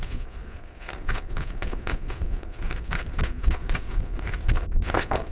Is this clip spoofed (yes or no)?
yes